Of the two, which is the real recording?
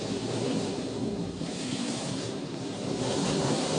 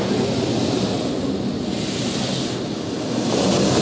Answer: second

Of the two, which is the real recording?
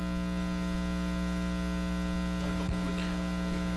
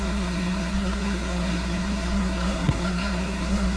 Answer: first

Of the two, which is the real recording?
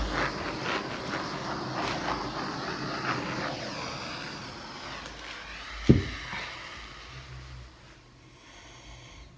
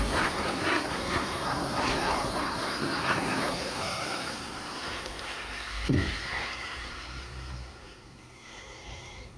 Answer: first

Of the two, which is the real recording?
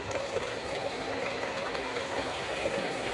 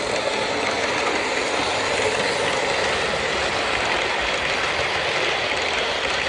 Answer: second